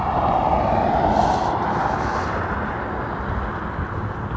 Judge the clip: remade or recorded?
recorded